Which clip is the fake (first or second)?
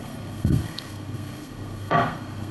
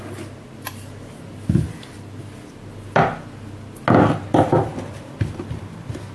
first